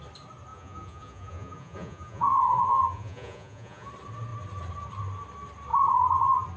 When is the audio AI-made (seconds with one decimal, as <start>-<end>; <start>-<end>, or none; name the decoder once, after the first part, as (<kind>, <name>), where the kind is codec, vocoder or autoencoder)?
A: 0.5-3.9 (vocoder, Vocos)